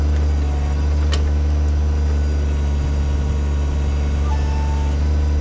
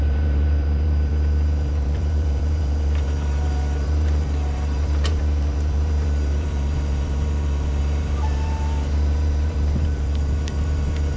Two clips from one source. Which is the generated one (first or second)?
second